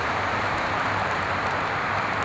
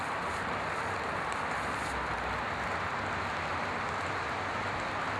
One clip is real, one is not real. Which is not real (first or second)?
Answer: first